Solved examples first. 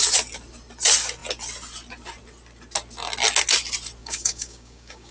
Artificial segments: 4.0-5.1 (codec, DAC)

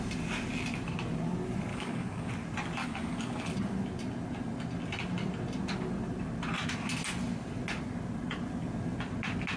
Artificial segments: 1.7-2.3 (codec, DAC); 2.8-3.5

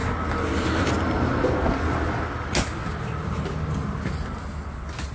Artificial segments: none

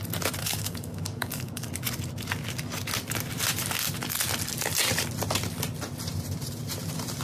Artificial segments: 0.4-1.7 (codec, DAC)

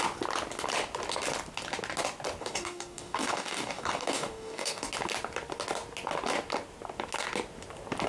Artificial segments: 2.4-4.9 (codec, DAC)